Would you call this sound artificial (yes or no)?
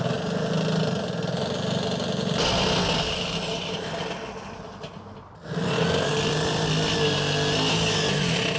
no